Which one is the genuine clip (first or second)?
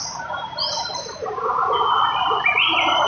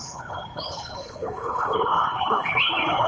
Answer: first